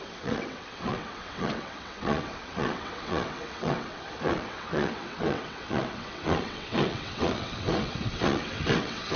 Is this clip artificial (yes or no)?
yes